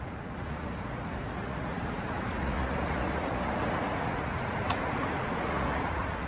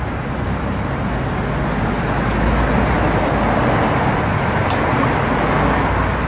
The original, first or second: second